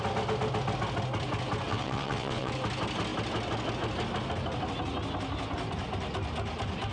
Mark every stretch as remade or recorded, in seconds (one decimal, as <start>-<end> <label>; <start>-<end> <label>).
0.0-1.7 recorded; 1.7-2.5 remade; 2.5-6.9 recorded